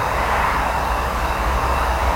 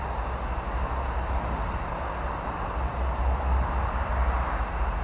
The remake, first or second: first